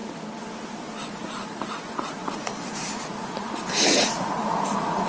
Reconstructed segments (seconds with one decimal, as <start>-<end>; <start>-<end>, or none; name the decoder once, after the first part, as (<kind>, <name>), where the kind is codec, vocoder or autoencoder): 1.1-5.1 (vocoder, Vocos)